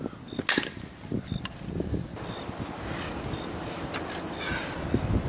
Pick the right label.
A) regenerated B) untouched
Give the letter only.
B